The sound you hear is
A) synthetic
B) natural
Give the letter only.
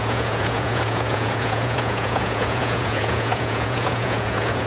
A